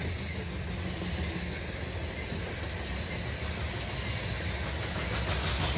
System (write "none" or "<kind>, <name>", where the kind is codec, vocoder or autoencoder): none